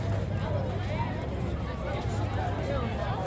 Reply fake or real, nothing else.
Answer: real